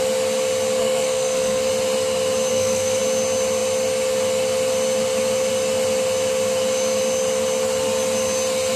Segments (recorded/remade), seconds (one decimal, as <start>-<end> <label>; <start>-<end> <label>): 0.0-0.8 recorded; 0.8-1.7 remade; 1.7-2.5 recorded; 2.5-3.0 remade; 3.0-8.8 recorded